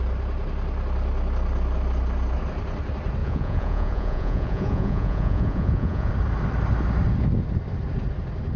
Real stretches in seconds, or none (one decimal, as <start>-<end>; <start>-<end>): 0.0-3.2; 6.1-8.6